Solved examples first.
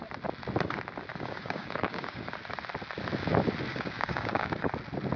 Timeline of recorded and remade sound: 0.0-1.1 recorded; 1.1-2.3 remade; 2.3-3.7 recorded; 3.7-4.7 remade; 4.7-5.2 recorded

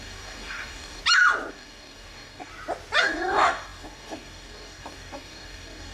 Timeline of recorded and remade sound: 0.0-1.0 remade; 1.0-1.5 recorded; 1.5-2.5 remade; 2.5-3.0 recorded; 3.0-5.9 remade

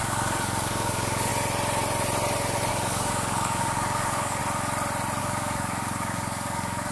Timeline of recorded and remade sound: 0.0-1.3 remade; 1.3-2.7 recorded; 2.7-4.4 remade; 4.4-5.2 recorded; 5.2-6.9 remade

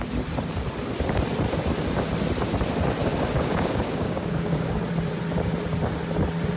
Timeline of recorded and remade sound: 0.0-3.1 recorded; 3.1-4.8 remade; 4.8-6.6 recorded

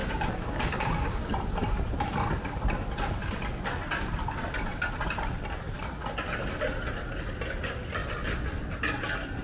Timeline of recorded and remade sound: 0.0-1.3 remade; 1.3-9.4 recorded

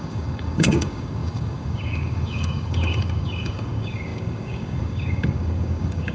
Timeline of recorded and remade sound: 0.0-6.1 remade